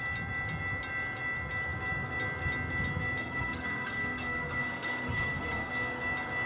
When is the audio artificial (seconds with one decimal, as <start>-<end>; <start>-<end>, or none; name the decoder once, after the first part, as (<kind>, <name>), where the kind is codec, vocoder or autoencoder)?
3.2-5.7 (codec, SNAC)